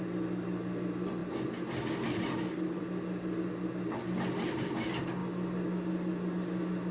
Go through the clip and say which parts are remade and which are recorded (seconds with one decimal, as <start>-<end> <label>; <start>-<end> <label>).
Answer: 0.0-6.9 recorded